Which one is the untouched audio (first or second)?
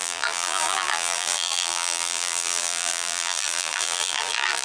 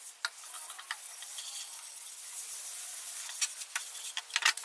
second